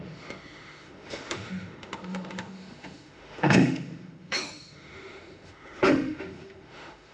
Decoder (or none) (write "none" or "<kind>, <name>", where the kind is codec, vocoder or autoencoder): autoencoder, DAC-VAE